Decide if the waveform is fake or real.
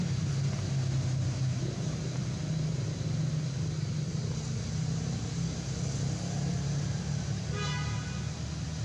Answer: real